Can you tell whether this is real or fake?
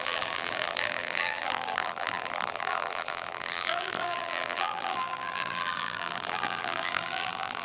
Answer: fake